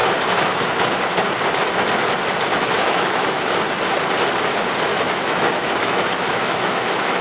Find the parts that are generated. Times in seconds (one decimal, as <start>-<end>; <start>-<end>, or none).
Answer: 2.5-3.4; 4.9-7.2